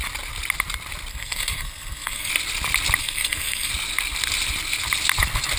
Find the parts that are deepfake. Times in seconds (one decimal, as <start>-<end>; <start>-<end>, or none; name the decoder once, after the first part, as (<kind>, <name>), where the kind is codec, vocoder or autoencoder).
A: 1.1-2.3 (codec, SNAC); 3.0-3.7